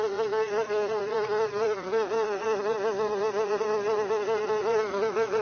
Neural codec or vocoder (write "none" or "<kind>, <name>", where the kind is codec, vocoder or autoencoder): vocoder, Vocos